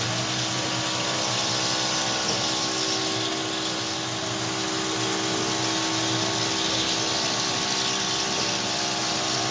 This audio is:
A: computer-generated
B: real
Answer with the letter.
B